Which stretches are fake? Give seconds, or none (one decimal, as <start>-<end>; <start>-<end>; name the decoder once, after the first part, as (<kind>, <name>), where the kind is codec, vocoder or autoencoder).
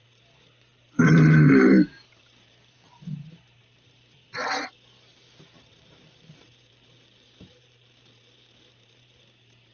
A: 0.0-9.7 (vocoder, BigVGAN v2)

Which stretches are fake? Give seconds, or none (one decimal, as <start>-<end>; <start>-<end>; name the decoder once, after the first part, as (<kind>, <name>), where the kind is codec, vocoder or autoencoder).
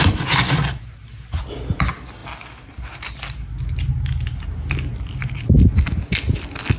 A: none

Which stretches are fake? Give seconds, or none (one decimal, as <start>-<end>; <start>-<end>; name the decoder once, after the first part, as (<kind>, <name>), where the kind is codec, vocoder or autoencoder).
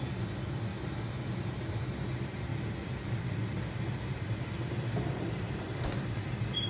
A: 0.7-1.7 (vocoder, BigVGAN v2); 2.5-6.7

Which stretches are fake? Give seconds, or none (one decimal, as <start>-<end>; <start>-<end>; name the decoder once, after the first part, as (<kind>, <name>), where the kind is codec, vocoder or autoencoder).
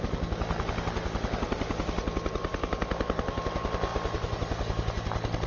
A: none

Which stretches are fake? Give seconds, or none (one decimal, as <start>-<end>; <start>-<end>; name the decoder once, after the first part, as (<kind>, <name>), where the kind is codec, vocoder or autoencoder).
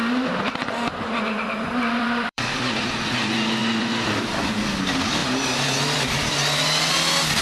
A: 0.0-2.9 (vocoder, BigVGAN v2); 3.6-4.2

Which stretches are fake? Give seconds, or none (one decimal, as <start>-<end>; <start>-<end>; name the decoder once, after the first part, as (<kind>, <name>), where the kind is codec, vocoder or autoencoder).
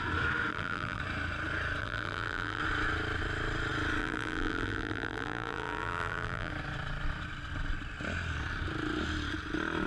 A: 0.5-1.0 (vocoder, BigVGAN v2); 1.8-2.6; 4.0-6.5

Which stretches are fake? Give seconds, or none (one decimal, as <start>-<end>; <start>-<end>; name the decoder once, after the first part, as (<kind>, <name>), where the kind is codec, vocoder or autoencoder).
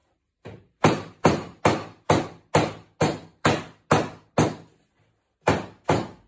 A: 0.0-1.6 (vocoder, BigVGAN v2); 3.0-3.6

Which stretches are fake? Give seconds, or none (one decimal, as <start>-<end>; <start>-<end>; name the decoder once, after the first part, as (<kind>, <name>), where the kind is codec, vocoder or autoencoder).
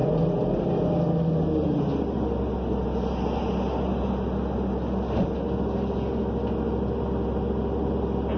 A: 0.0-0.6 (vocoder, BigVGAN v2)